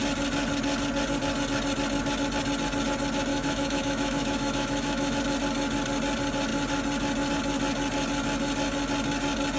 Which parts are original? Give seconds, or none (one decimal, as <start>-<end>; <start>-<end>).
0.0-3.3; 5.2-9.6